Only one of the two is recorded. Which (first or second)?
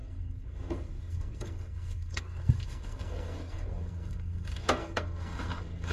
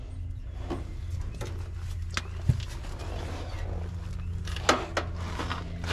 second